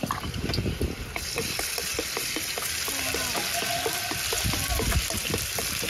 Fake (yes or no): no